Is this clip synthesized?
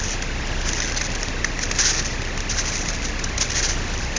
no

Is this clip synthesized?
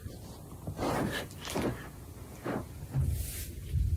no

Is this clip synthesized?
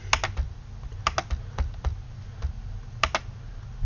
no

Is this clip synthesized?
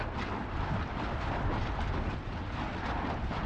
no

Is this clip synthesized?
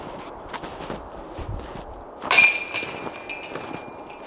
no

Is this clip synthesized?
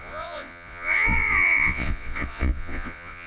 yes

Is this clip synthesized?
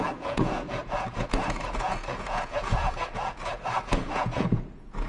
yes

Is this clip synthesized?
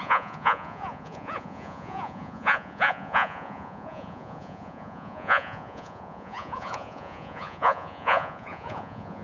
yes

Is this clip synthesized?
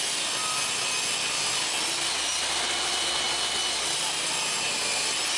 no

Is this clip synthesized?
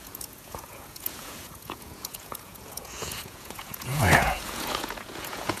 yes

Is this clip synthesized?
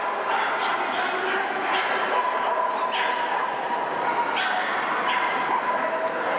no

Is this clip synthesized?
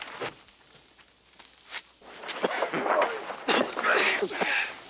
no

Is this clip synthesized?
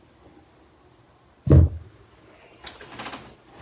no